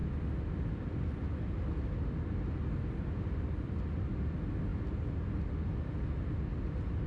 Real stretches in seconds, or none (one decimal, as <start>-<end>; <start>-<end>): 0.0-7.1